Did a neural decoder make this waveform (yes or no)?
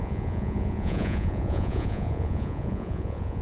yes